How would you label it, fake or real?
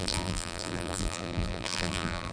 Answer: fake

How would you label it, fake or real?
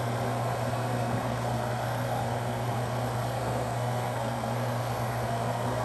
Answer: fake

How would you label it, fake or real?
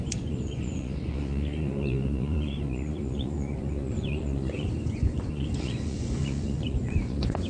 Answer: fake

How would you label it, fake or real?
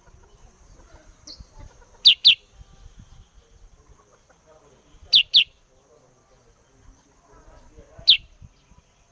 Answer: real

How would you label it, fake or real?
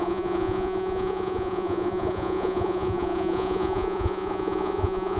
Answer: fake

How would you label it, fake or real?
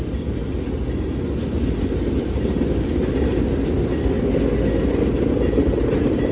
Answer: real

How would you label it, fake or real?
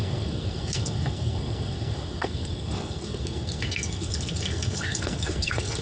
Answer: fake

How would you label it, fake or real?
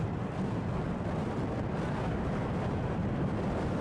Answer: real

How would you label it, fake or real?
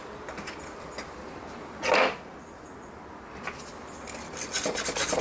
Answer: real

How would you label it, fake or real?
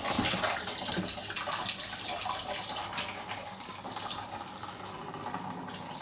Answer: real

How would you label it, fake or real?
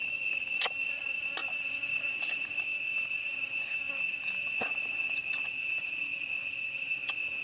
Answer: real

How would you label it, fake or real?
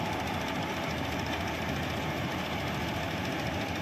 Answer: real